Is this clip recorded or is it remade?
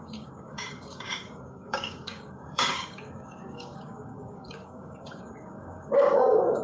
remade